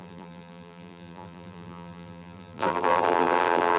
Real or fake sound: fake